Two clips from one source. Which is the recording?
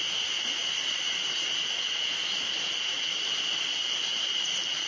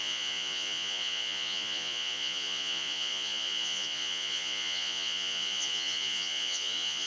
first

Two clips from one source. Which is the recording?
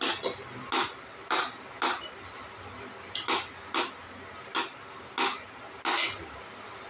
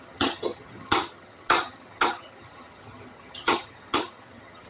first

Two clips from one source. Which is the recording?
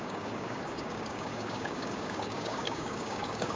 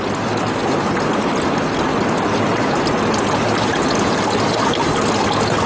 second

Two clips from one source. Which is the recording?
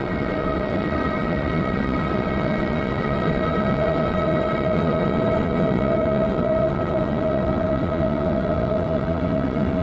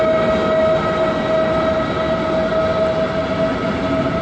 second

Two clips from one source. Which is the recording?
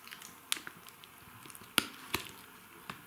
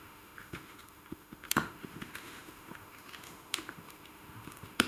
first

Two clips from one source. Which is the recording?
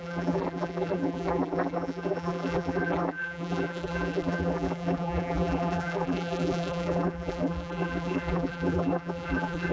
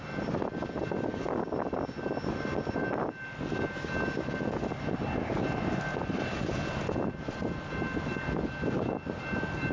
second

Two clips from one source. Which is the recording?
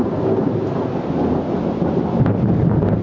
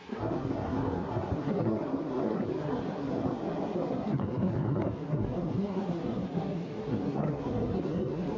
first